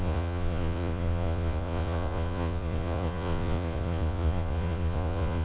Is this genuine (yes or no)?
no